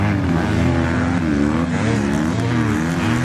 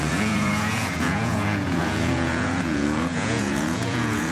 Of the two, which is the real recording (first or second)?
first